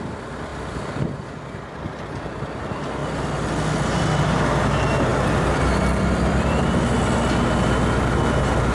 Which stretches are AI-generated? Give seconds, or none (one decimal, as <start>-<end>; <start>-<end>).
none